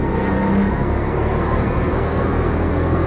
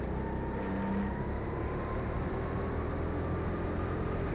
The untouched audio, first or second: second